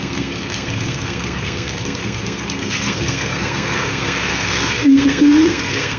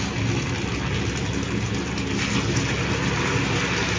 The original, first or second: second